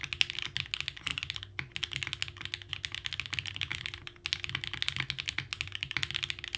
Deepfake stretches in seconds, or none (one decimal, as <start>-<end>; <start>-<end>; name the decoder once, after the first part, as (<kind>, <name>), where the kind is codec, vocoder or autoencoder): none